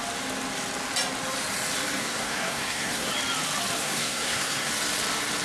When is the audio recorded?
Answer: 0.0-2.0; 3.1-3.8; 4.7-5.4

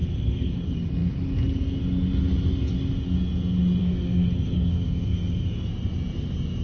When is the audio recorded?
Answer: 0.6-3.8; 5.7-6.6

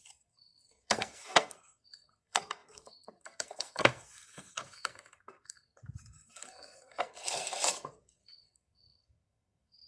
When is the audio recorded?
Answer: none